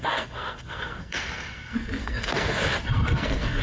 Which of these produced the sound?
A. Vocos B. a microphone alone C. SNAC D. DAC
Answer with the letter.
C